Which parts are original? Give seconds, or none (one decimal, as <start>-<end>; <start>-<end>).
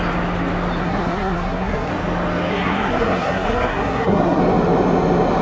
0.0-0.8; 1.9-2.5; 4.4-5.4